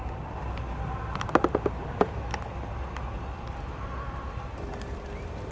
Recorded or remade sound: recorded